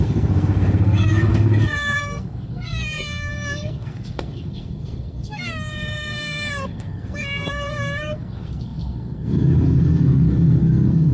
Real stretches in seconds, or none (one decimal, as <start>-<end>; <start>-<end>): none